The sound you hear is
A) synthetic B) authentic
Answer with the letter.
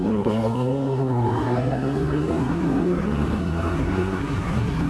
A